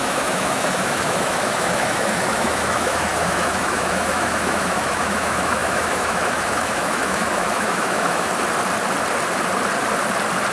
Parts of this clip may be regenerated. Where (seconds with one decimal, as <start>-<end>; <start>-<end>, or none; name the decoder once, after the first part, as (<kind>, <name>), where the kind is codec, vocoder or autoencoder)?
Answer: 0.0-8.3 (autoencoder, DAC-VAE)